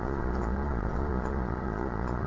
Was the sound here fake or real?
fake